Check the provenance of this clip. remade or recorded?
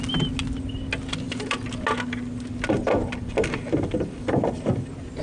recorded